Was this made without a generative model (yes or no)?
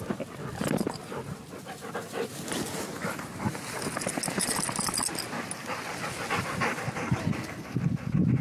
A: yes